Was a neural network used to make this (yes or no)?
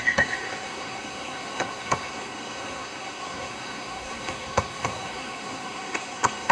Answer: yes